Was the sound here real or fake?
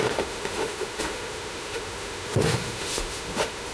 fake